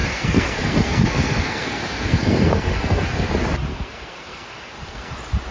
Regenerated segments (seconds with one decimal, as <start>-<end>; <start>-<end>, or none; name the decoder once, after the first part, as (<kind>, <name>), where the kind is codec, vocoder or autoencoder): 0.0-3.3 (codec, SNAC); 3.7-5.1